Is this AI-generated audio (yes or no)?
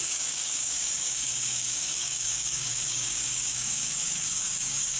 yes